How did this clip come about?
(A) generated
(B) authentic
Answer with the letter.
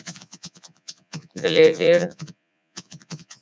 A